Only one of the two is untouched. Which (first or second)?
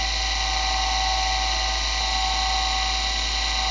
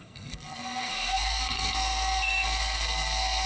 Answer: first